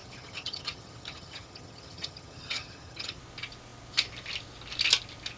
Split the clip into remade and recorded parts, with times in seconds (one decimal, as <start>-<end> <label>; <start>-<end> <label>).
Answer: 0.0-3.2 remade; 3.2-5.4 recorded